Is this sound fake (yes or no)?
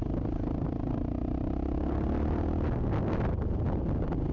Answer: no